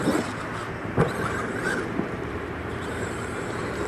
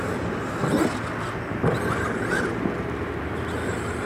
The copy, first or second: first